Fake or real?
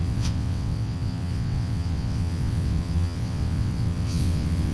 fake